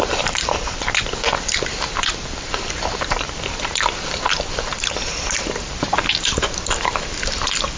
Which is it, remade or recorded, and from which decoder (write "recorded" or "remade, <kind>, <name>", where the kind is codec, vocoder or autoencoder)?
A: remade, vocoder, BigVGAN v2